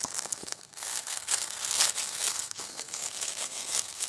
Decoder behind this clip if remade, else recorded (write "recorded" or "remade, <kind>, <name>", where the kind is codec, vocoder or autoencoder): remade, codec, SNAC